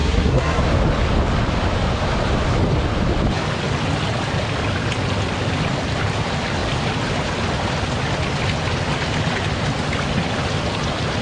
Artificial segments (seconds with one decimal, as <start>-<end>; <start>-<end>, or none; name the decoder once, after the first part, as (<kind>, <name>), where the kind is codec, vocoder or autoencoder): 0.0-0.6 (codec, SNAC)